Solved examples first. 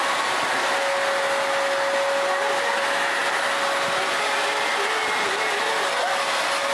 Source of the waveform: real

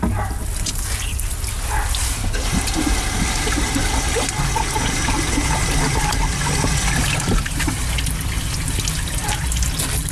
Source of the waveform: real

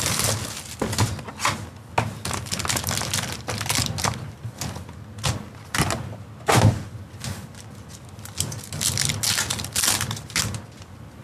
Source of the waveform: real